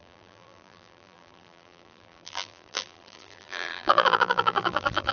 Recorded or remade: remade